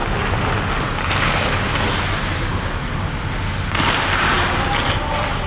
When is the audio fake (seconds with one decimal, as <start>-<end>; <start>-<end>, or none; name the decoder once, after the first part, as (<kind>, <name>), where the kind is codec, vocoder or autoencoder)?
none